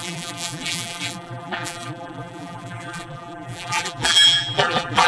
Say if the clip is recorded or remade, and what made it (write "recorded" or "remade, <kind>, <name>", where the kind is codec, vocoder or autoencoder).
remade, vocoder, BigVGAN v2